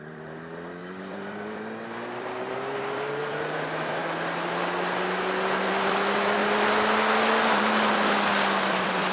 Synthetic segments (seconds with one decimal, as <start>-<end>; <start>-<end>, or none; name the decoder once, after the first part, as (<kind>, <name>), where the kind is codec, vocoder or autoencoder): 0.0-4.0 (vocoder, BigVGAN v2); 5.6-6.4; 8.7-9.1